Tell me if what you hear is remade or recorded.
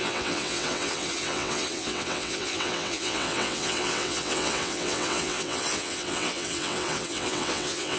remade